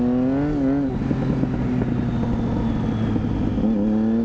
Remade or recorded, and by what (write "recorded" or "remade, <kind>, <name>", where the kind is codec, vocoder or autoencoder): recorded